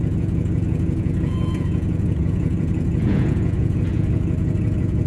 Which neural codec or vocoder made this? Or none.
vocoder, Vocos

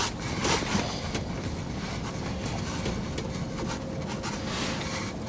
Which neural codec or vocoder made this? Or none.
none